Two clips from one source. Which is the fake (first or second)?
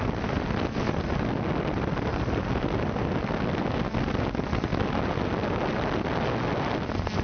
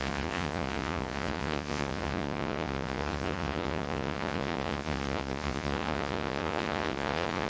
second